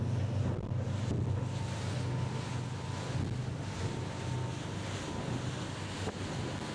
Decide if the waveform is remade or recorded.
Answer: recorded